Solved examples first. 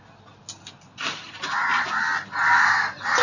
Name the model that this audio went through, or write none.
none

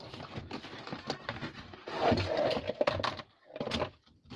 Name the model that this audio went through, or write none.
none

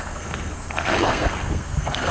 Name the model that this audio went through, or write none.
codec, SNAC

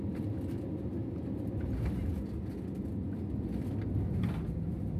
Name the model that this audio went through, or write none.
none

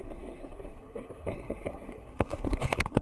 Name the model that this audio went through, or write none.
codec, SNAC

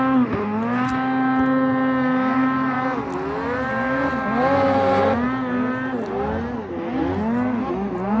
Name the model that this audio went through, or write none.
none